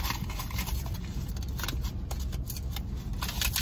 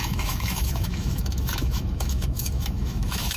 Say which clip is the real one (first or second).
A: first